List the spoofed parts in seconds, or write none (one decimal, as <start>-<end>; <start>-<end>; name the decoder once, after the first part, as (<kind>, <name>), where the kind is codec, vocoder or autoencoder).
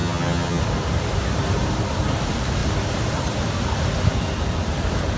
0.0-0.6 (vocoder, HiFi-GAN)